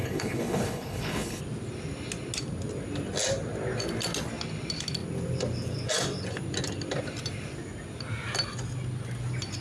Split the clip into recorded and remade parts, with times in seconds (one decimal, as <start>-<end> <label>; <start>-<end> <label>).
0.0-1.4 remade; 1.4-9.6 recorded